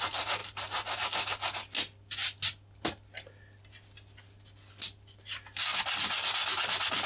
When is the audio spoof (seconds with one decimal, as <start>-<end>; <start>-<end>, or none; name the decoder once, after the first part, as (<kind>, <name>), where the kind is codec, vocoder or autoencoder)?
none